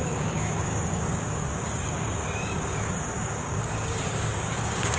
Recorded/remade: remade